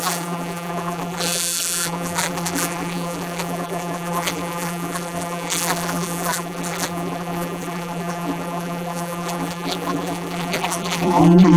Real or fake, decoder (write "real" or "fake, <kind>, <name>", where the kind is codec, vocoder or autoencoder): fake, vocoder, BigVGAN v2